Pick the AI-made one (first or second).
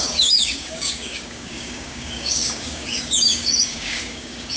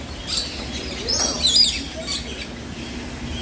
first